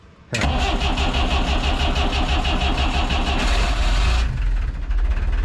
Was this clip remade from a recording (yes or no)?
no